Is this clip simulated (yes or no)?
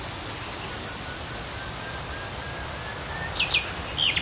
no